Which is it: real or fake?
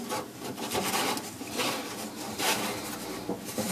real